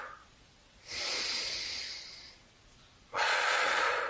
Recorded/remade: remade